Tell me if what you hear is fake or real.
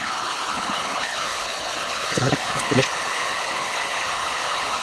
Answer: fake